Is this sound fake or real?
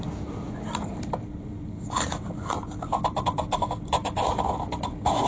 real